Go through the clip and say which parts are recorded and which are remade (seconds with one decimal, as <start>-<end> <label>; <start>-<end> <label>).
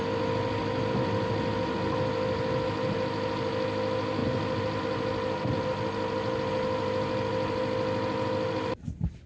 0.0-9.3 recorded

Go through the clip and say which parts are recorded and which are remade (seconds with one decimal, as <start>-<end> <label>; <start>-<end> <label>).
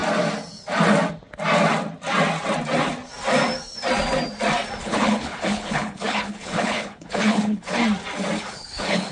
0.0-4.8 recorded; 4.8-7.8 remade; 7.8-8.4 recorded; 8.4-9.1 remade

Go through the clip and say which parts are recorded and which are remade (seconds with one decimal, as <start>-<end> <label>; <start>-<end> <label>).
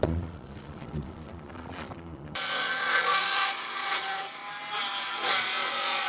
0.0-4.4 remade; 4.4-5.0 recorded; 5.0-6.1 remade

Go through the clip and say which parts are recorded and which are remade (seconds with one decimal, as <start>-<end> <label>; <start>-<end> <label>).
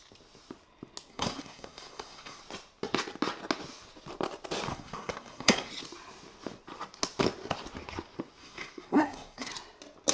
0.0-1.1 recorded; 1.1-2.4 remade; 2.4-4.7 recorded; 4.7-5.7 remade; 5.7-8.4 recorded; 8.4-9.5 remade; 9.5-10.1 recorded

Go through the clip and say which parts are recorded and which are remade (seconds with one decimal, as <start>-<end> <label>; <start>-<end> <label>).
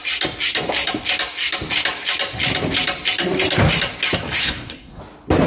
0.0-4.4 recorded; 4.4-5.0 remade; 5.0-5.5 recorded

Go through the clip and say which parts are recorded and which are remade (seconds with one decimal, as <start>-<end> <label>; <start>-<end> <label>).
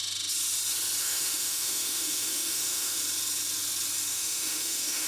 0.0-1.0 recorded; 1.0-3.0 remade; 3.0-4.1 recorded; 4.1-5.1 remade